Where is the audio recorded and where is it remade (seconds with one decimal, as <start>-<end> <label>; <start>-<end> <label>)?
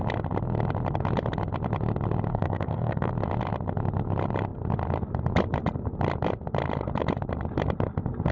0.0-2.3 recorded; 2.3-3.1 remade; 3.1-8.3 recorded